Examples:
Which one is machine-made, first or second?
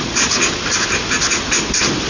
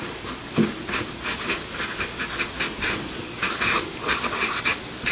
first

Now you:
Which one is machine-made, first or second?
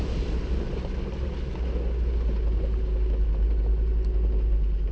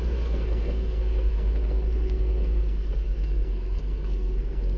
second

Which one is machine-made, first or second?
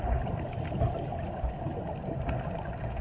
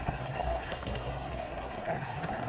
second